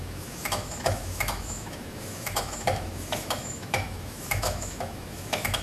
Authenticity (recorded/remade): remade